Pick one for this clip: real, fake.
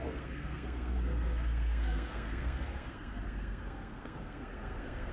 fake